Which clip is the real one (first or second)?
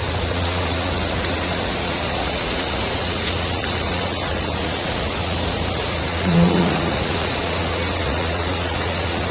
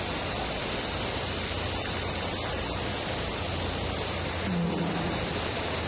second